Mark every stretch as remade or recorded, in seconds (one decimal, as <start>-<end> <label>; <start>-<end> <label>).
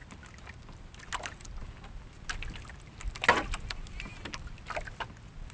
0.0-5.5 recorded